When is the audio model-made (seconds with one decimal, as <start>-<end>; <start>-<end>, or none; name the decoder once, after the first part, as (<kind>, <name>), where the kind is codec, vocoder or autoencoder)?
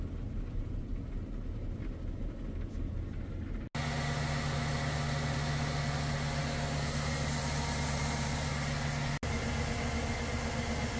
none